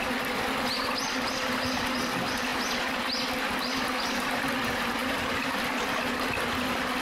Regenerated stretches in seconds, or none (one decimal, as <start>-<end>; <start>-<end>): 5.0-5.7